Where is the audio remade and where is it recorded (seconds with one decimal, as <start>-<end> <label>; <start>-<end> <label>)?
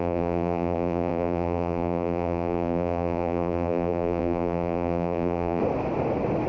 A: 0.0-5.6 remade; 5.6-6.5 recorded